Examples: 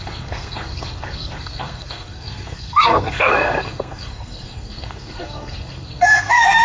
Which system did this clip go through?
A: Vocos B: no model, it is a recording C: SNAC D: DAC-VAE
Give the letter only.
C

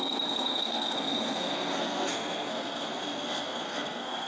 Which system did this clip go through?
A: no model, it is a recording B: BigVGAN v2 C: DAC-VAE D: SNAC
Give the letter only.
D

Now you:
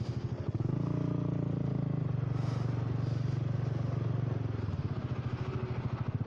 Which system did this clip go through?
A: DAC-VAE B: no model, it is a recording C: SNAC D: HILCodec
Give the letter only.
B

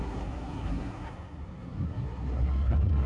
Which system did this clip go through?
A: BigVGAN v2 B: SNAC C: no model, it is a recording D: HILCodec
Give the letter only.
B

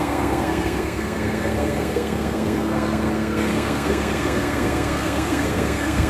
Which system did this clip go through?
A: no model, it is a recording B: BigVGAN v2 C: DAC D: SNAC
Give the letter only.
D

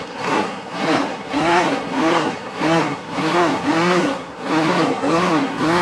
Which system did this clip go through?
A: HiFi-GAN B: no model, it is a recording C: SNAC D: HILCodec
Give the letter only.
C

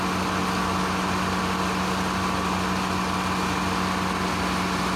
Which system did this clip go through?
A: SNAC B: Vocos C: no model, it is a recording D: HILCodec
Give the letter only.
C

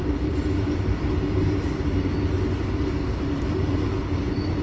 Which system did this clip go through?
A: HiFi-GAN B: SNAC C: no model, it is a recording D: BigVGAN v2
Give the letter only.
C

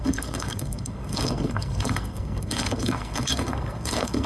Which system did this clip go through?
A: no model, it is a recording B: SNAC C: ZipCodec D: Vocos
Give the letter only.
B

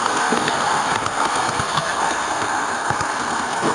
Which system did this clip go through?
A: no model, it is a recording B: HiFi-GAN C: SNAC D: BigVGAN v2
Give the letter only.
C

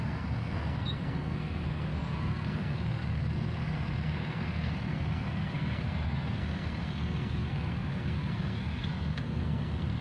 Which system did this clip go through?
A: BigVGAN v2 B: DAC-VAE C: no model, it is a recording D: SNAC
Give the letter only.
D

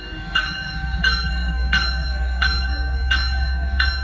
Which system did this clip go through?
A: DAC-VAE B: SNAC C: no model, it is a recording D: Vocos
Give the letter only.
B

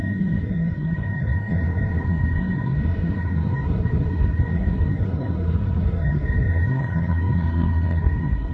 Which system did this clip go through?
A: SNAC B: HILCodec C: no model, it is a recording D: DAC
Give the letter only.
A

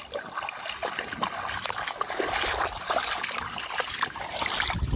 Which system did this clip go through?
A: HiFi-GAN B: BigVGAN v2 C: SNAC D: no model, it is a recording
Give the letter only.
D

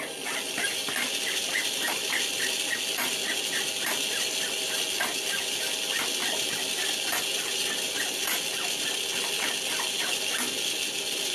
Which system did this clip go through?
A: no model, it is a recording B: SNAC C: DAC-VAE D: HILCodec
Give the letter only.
A